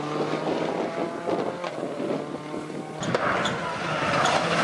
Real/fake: real